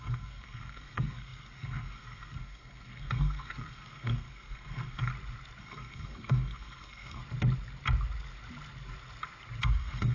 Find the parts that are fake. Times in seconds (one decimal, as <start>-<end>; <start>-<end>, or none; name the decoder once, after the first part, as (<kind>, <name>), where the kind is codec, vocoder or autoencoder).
0.0-5.1 (codec, SNAC); 5.6-7.2; 9.6-10.1